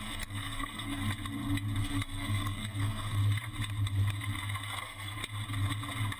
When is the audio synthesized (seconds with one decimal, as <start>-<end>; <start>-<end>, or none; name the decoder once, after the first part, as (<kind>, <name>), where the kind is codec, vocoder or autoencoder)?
0.0-1.0 (codec, SNAC); 1.8-3.2; 4.8-5.2